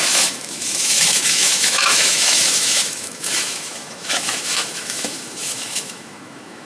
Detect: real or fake fake